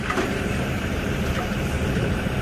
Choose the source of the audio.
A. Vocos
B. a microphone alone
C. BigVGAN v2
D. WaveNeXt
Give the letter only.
C